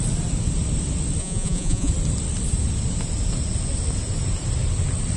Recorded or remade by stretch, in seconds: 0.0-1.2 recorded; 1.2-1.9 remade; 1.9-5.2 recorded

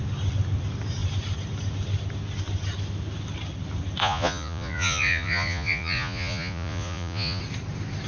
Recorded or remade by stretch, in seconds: 0.0-4.0 recorded; 4.0-7.4 remade; 7.4-8.1 recorded